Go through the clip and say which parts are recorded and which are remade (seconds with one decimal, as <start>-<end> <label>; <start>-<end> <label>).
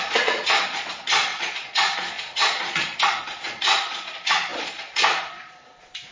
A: 0.0-6.1 remade